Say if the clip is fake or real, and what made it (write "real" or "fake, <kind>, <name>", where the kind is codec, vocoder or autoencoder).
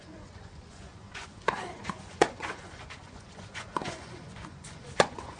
fake, vocoder, Vocos